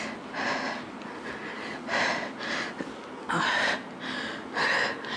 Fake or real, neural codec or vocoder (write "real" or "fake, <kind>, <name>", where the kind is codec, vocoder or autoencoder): real